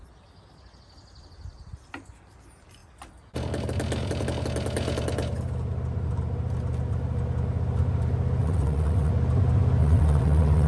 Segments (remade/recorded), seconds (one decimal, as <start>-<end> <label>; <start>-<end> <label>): 0.0-8.4 recorded; 8.4-9.1 remade; 9.1-9.8 recorded; 9.8-10.7 remade